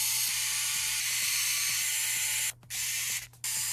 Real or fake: real